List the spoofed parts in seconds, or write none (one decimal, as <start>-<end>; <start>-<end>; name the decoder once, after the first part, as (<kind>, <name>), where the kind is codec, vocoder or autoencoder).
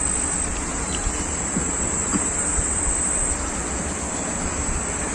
0.7-2.8 (vocoder, BigVGAN v2)